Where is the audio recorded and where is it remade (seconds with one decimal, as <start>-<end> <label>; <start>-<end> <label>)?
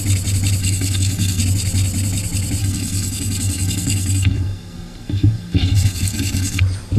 0.0-0.6 recorded; 0.6-1.4 remade; 1.4-2.6 recorded; 2.6-6.6 remade; 6.6-7.0 recorded